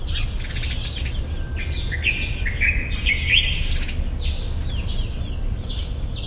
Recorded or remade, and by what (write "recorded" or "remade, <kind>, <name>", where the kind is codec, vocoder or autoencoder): recorded